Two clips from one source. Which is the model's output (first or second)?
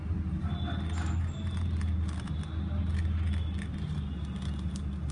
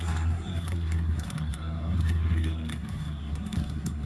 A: second